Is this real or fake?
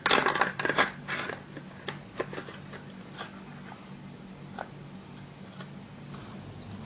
real